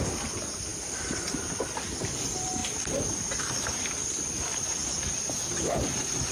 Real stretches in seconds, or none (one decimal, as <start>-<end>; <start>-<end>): 0.0-6.3